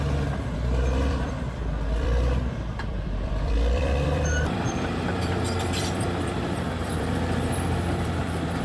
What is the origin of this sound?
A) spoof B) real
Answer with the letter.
A